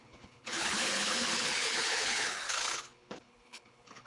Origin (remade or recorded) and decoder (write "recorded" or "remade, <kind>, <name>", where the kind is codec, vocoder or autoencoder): remade, codec, HILCodec